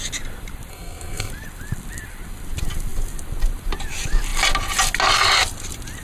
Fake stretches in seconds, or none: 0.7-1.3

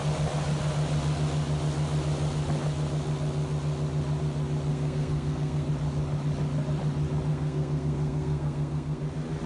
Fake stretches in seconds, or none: 4.7-5.7; 7.3-9.0

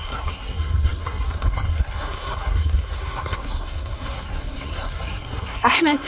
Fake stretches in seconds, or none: 0.0-6.1

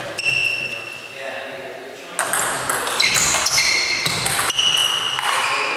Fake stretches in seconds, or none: none

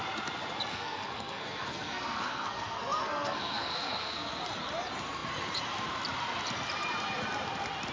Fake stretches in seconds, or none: 0.7-4.4

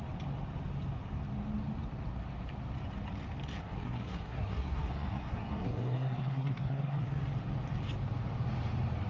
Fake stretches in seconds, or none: 3.6-7.2